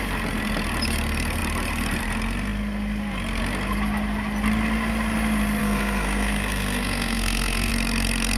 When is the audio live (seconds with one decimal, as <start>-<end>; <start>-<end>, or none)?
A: 0.0-5.6; 7.7-8.4